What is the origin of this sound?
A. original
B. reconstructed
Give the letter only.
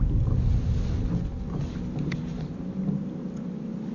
A